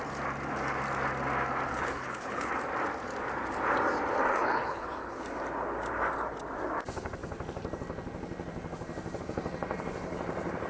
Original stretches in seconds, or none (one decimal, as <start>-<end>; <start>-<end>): 0.0-1.7; 2.5-4.3; 5.2-10.7